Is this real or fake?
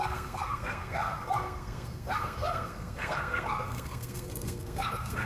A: fake